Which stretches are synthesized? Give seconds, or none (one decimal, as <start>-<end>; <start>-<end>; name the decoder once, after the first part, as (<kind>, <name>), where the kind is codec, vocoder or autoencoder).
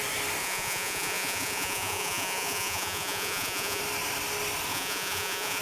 0.4-3.8 (vocoder, Vocos); 4.7-5.6